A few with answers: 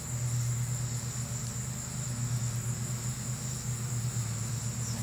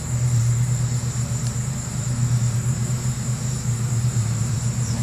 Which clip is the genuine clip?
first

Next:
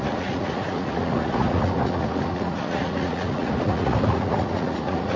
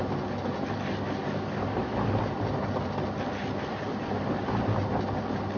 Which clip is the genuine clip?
second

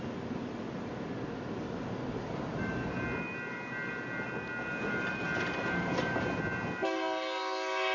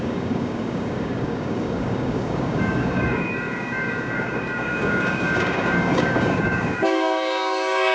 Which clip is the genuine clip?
first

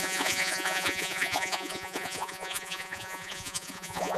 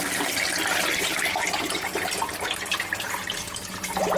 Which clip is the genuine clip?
second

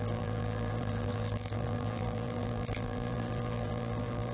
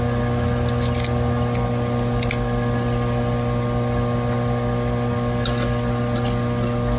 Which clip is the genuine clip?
second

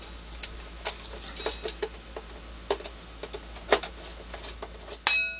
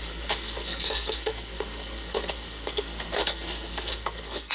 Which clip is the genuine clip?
first